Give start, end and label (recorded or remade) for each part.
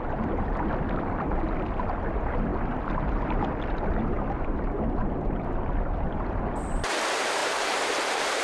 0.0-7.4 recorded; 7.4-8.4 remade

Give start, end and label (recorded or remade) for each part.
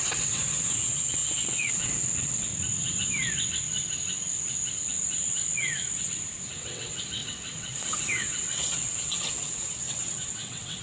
0.0-2.5 remade; 2.5-6.5 recorded; 6.5-10.8 remade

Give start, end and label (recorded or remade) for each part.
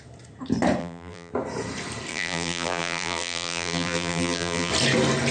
0.0-0.8 recorded; 0.8-1.3 remade; 1.3-2.1 recorded; 2.1-4.7 remade; 4.7-5.3 recorded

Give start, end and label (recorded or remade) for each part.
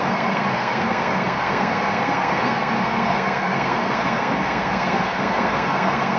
0.0-6.2 remade